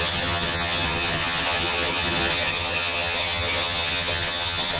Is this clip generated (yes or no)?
yes